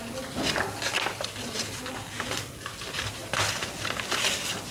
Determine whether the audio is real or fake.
real